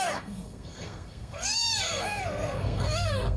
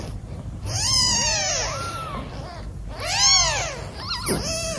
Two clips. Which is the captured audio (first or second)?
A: second